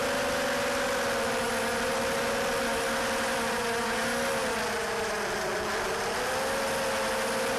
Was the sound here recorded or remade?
recorded